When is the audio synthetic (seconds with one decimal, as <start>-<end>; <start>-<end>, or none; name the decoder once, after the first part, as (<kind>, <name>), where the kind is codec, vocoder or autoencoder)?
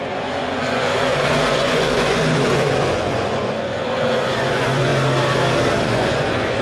0.0-4.9 (vocoder, Vocos); 5.8-6.6